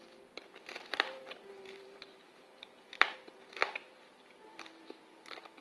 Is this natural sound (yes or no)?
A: no